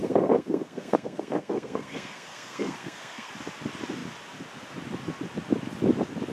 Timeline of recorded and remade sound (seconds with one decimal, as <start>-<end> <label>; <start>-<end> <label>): 0.0-3.3 remade; 3.3-6.3 recorded